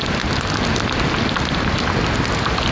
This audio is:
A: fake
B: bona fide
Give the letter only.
B